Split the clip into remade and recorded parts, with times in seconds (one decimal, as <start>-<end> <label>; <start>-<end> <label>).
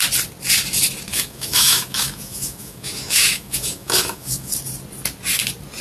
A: 0.0-1.1 recorded; 1.1-4.5 remade; 4.5-5.8 recorded